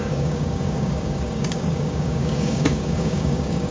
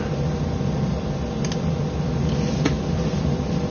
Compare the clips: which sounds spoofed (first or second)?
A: first